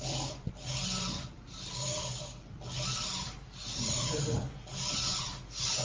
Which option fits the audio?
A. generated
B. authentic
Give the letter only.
B